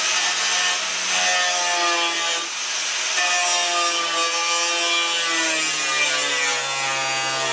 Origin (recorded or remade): recorded